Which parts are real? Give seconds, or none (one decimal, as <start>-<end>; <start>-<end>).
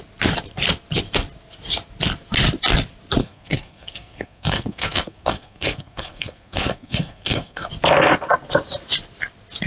0.0-3.2; 7.7-9.7